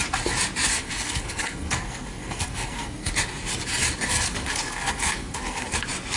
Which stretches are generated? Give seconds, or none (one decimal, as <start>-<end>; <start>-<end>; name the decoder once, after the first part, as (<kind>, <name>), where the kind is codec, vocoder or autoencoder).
0.7-3.1 (codec, SNAC); 4.1-5.8

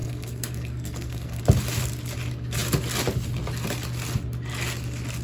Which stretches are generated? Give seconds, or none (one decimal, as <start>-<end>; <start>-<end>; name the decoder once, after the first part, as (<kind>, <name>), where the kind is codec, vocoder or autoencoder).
0.0-1.4 (codec, SNAC)

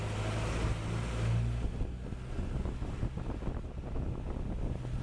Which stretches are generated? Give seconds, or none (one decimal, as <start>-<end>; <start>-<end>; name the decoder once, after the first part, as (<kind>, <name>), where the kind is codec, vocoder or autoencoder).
none

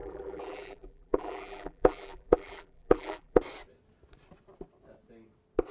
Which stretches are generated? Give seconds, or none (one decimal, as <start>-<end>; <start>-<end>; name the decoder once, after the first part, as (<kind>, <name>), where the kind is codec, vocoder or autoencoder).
0.0-3.4 (vocoder, BigVGAN v2)

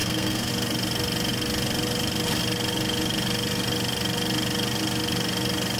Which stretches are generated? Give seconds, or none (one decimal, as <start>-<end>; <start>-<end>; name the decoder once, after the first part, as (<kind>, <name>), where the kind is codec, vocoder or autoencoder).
0.0-0.5 (codec, SNAC)

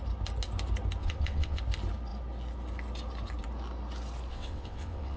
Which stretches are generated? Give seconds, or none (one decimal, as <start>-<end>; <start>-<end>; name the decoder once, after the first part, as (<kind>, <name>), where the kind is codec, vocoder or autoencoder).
1.0-1.6 (vocoder, WaveNeXt); 4.3-5.2

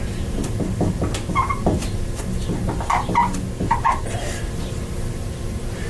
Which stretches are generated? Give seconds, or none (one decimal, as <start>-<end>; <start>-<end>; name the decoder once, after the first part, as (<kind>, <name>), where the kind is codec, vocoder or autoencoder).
0.0-0.4 (vocoder, BigVGAN v2); 1.3-3.2; 4.2-5.9

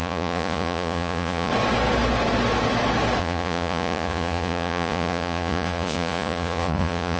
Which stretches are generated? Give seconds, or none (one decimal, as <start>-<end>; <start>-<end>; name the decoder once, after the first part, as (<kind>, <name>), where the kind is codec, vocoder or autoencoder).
0.0-1.5 (vocoder, Vocos); 3.2-7.2